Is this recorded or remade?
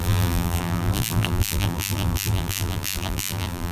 remade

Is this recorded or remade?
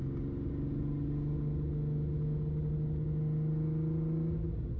recorded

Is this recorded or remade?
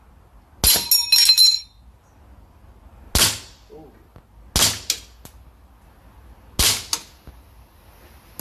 recorded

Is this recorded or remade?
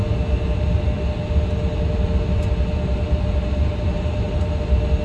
recorded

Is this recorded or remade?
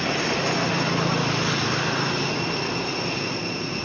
recorded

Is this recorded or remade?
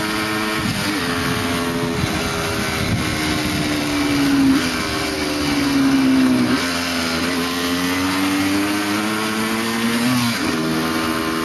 recorded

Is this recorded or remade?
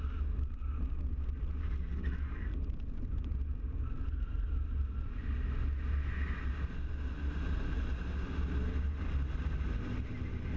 recorded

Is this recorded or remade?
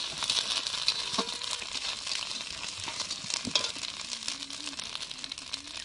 recorded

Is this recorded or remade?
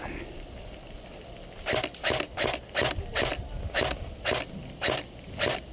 recorded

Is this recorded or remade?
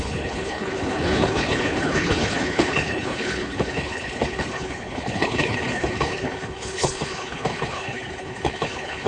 remade